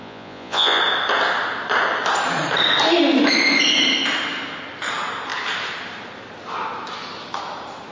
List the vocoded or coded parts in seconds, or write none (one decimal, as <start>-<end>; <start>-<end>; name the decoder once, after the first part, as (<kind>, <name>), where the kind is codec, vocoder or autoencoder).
0.0-0.8 (vocoder, Vocos)